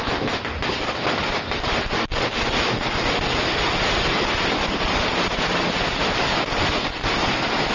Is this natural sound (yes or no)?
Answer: yes